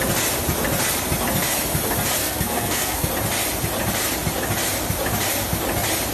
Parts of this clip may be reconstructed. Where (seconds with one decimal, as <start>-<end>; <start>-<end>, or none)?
2.2-3.1